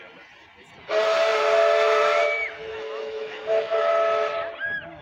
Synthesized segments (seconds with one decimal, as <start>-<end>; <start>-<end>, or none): 2.7-3.9